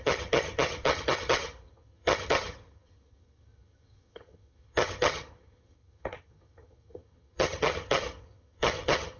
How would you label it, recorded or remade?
remade